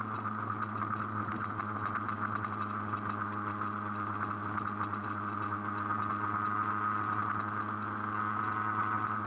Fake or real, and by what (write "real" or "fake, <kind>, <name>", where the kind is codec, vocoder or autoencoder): real